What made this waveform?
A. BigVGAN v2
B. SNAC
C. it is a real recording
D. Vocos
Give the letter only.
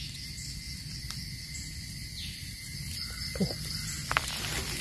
C